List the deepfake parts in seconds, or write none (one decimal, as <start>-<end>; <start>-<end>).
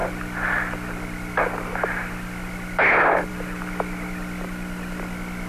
none